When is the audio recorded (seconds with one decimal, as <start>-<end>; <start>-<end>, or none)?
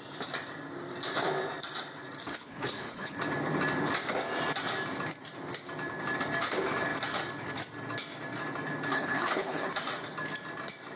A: 0.0-2.3; 3.2-8.9; 9.7-11.0